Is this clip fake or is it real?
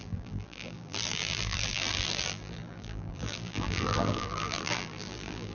fake